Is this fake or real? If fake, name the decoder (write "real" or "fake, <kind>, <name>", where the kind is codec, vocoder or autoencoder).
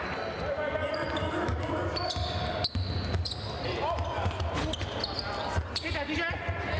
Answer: real